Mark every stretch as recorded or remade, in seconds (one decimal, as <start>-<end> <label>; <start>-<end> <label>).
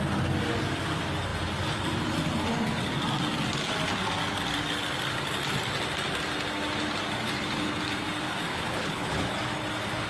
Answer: 0.0-8.5 recorded; 8.5-9.3 remade; 9.3-10.1 recorded